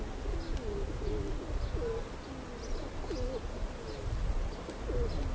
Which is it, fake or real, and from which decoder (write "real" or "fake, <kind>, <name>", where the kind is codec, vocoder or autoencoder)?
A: real